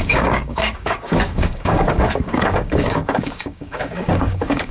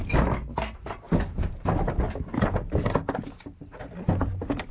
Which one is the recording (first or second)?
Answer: second